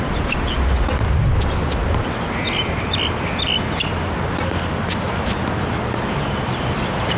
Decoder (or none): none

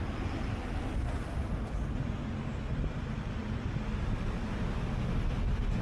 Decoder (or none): none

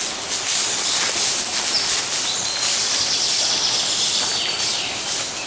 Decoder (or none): none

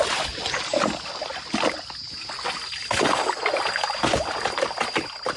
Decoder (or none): none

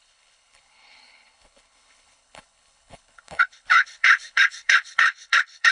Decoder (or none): codec, HILCodec